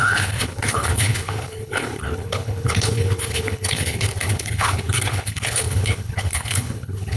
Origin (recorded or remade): remade